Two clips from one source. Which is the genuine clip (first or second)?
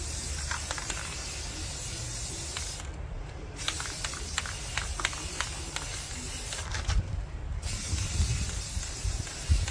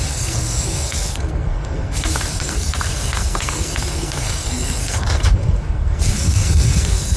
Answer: first